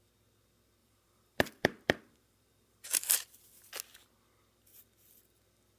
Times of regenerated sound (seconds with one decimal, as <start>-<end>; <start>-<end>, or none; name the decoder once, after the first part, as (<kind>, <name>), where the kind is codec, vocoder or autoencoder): 0.8-3.4 (vocoder, BigVGAN v2)